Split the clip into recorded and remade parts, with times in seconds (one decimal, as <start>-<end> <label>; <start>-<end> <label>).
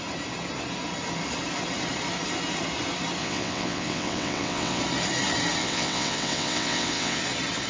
0.0-3.2 recorded; 3.2-4.8 remade; 4.8-5.6 recorded; 5.6-7.2 remade; 7.2-7.7 recorded